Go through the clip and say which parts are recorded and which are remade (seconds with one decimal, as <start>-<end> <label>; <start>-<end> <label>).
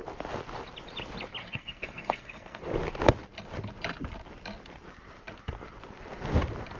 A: 0.0-1.4 recorded; 1.4-2.6 remade; 2.6-6.8 recorded